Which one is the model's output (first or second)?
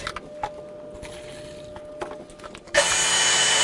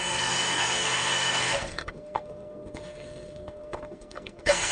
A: second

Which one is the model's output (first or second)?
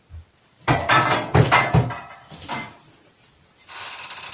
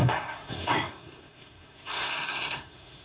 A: second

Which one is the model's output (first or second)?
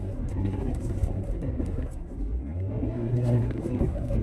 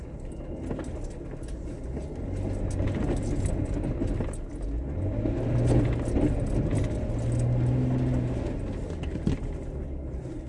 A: first